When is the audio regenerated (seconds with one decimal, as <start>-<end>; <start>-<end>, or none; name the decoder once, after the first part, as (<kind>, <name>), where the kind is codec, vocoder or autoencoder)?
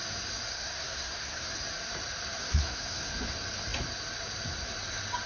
0.5-1.5 (codec, SNAC); 2.4-3.1